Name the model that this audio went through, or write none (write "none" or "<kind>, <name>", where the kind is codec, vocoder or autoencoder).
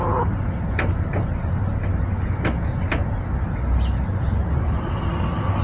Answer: none